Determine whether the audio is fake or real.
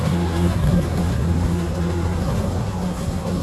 fake